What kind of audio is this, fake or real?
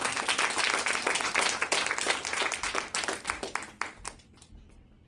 real